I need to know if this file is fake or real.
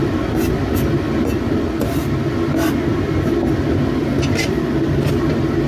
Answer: real